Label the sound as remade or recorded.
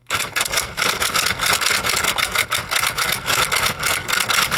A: remade